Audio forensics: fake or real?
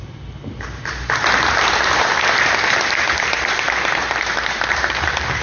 fake